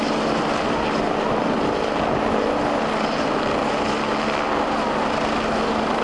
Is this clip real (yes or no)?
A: yes